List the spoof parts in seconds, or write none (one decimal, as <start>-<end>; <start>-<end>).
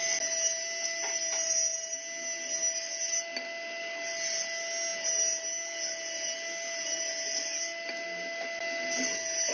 none